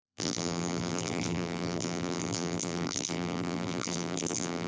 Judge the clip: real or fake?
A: fake